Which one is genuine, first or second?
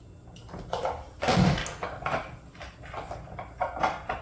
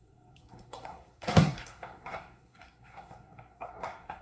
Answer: first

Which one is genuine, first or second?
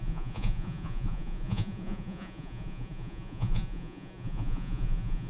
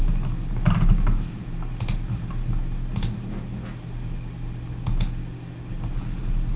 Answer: second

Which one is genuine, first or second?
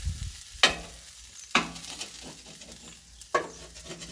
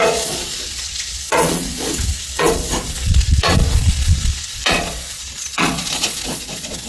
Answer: first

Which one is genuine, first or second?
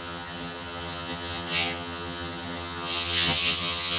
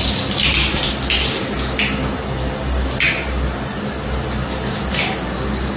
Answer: second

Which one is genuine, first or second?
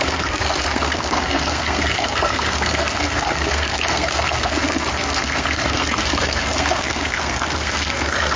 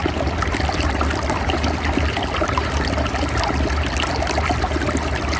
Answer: second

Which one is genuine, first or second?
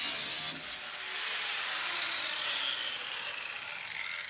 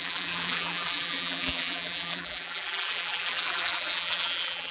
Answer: first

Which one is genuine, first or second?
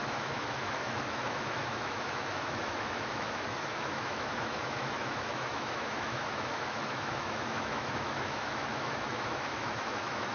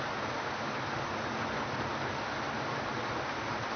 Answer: second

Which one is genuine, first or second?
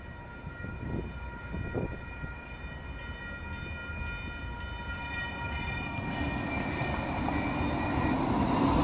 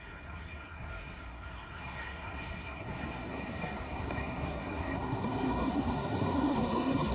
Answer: first